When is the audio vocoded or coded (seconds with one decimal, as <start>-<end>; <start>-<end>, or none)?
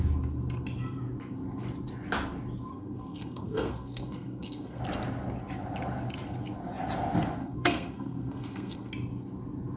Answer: 2.7-4.8; 7.4-8.9